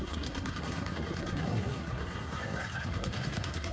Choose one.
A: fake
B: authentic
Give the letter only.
A